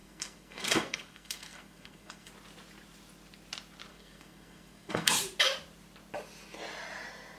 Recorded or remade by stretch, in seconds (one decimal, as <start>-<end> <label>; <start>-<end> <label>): 0.0-2.3 remade; 2.3-3.9 recorded; 3.9-5.1 remade; 5.1-7.4 recorded